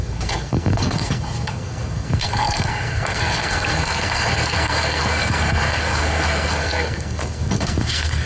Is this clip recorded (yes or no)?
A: no